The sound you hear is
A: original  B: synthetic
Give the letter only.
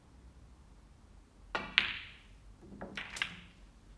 A